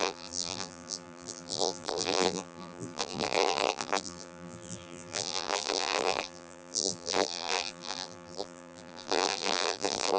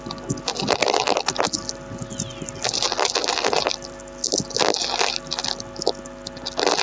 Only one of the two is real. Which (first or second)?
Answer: second